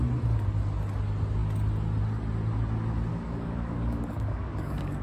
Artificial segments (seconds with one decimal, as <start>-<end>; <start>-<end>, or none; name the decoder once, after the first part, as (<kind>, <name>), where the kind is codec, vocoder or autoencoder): 3.1-5.0 (codec, DAC)